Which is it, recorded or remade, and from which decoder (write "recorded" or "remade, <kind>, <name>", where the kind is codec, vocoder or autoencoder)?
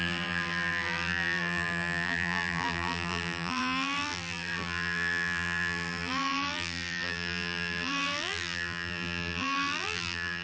remade, vocoder, BigVGAN v2